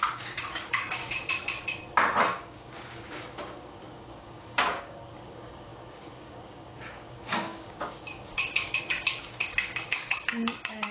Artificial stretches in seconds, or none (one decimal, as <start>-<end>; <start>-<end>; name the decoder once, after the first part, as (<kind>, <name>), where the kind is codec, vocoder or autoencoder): 0.0-1.0 (codec, DAC); 2.4-10.9

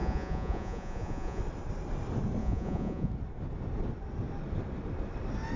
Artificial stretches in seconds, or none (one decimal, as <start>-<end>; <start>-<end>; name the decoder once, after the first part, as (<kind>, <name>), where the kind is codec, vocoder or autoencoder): 0.0-1.4 (vocoder, Vocos); 2.4-3.1

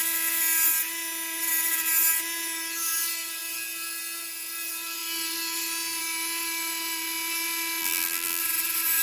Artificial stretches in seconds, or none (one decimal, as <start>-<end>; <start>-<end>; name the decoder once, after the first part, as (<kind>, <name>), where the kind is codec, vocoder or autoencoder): 7.8-8.4 (vocoder, BigVGAN v2)

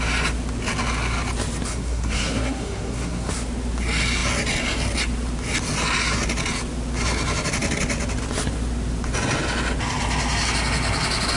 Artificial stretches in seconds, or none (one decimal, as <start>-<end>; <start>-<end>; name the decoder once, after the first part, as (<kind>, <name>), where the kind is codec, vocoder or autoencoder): 1.7-3.3 (codec, SNAC)

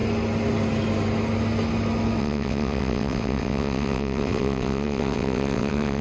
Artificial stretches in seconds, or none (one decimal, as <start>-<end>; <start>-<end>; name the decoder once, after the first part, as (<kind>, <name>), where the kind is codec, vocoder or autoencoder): 2.2-6.0 (vocoder, WaveNeXt)

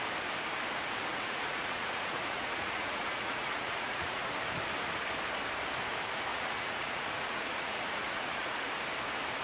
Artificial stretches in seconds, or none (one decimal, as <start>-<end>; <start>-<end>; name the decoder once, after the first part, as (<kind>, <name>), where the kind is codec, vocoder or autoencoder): 1.1-4.3 (vocoder, Vocos); 6.3-8.7

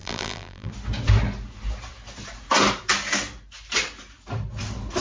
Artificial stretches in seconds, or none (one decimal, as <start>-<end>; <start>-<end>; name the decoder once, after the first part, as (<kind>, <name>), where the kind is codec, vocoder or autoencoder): 0.0-0.7 (vocoder, BigVGAN v2)